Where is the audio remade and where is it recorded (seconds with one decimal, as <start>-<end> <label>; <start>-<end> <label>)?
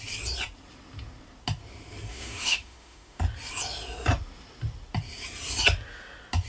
0.0-2.1 recorded; 2.1-3.2 remade; 3.2-6.5 recorded